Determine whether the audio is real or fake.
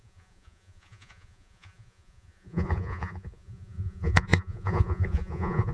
fake